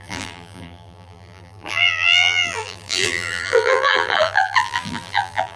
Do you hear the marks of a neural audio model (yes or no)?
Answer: yes